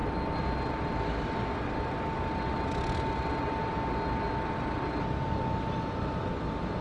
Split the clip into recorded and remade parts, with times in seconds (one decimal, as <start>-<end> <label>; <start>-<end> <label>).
0.0-6.8 recorded